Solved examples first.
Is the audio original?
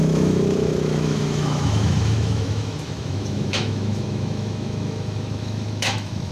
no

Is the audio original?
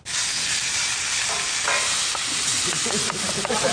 yes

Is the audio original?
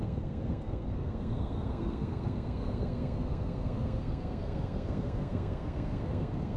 no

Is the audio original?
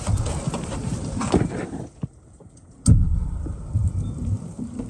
no